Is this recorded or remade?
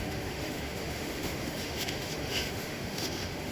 remade